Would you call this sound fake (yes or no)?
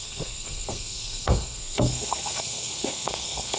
yes